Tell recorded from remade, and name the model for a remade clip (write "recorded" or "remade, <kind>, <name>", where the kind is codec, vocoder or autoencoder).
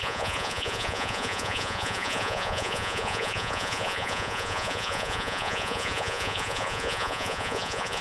remade, vocoder, Vocos